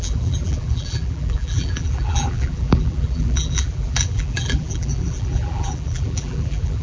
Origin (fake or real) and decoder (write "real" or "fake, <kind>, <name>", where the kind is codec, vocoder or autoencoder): fake, vocoder, BigVGAN v2